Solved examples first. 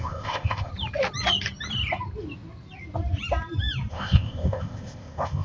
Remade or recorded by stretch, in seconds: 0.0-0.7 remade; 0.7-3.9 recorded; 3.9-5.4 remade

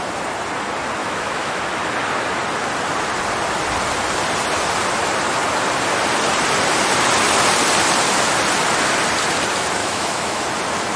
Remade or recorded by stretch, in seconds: 0.0-1.0 recorded; 1.0-1.6 remade; 1.6-9.8 recorded; 9.8-10.4 remade; 10.4-11.0 recorded

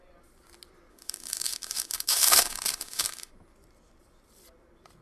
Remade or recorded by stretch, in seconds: 0.0-0.9 recorded; 0.9-3.3 remade; 3.3-5.0 recorded

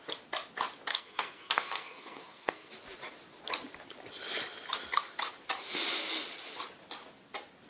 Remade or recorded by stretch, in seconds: 0.0-0.9 recorded; 0.9-2.7 remade; 2.7-7.7 recorded

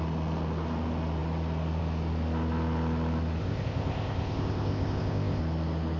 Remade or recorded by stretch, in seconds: 0.0-3.4 recorded; 3.4-5.4 remade; 5.4-6.0 recorded

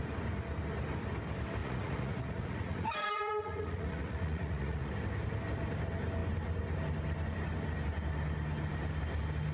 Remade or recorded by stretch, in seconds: 0.0-1.6 recorded; 1.6-4.9 remade; 4.9-9.5 recorded

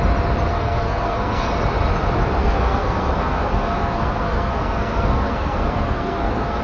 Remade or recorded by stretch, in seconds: 0.0-0.5 recorded; 0.5-1.5 remade; 1.5-2.4 recorded; 2.4-6.6 remade

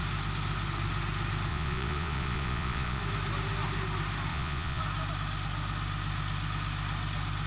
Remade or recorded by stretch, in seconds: 0.0-1.5 recorded; 1.5-3.0 remade; 3.0-4.3 recorded; 4.3-4.8 remade; 4.8-7.5 recorded